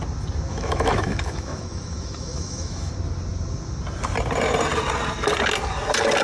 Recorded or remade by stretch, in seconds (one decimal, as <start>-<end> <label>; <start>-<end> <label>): 0.0-0.5 recorded; 0.5-2.9 remade; 2.9-6.2 recorded